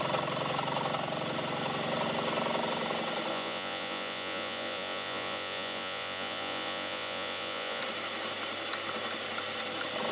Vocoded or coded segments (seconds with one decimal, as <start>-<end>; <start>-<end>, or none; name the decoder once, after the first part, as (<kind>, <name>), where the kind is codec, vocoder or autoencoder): 3.3-7.8 (vocoder, Vocos)